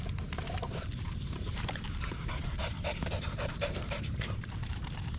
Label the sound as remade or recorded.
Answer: remade